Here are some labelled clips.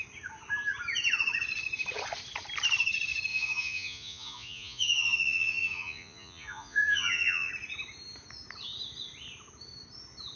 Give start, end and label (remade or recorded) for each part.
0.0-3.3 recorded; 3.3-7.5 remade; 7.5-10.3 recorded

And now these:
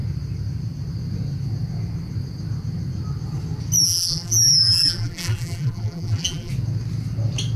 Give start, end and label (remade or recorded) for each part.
0.0-3.8 recorded; 3.8-6.5 remade; 6.5-7.6 recorded

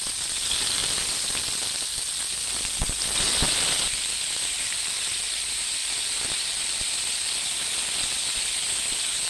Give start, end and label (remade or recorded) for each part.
0.0-9.3 recorded

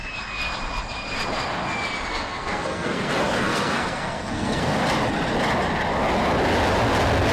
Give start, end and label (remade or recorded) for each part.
0.0-2.1 recorded; 2.1-4.8 remade; 4.8-7.3 recorded

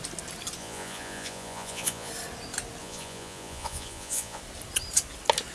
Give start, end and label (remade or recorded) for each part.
0.0-0.6 recorded; 0.6-2.1 remade; 2.1-2.8 recorded; 2.8-4.4 remade; 4.4-5.5 recorded

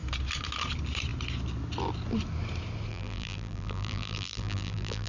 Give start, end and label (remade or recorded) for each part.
0.0-2.9 recorded; 2.9-5.1 remade

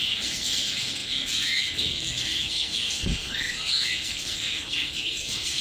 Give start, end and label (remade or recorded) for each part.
0.0-5.6 remade